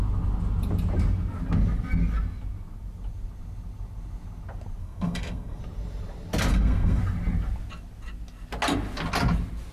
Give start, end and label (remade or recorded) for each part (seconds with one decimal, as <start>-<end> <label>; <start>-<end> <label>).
0.0-4.8 recorded; 4.8-5.6 remade; 5.6-6.5 recorded; 6.5-7.0 remade; 7.0-9.7 recorded

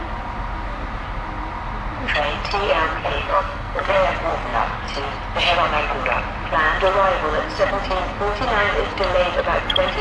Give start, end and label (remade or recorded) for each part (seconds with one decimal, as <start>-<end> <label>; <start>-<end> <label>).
0.0-3.0 recorded; 3.0-3.9 remade; 3.9-10.0 recorded

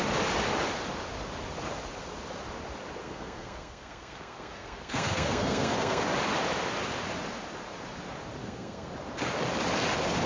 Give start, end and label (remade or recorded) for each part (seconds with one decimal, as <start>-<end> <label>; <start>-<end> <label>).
0.0-3.0 recorded; 3.0-6.0 remade; 6.0-8.4 recorded; 8.4-8.9 remade; 8.9-10.3 recorded